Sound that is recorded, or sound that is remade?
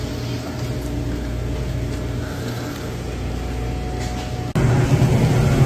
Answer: recorded